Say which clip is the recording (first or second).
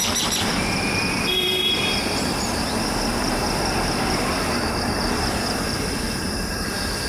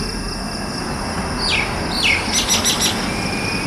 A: second